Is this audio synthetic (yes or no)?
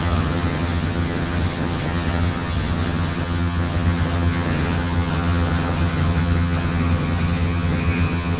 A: yes